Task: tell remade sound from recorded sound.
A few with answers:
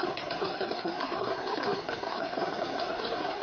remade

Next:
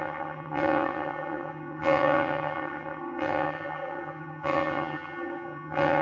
remade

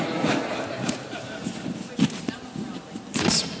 recorded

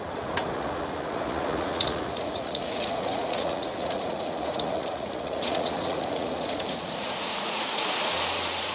remade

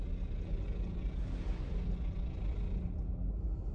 recorded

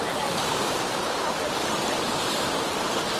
remade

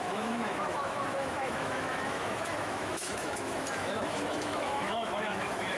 remade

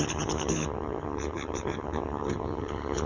remade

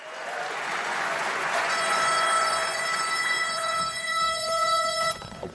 remade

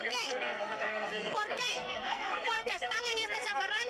remade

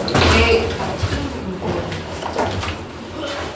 recorded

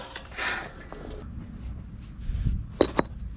recorded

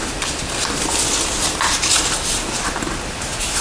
recorded